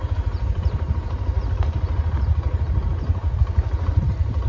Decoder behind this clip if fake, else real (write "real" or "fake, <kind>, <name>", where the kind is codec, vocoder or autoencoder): real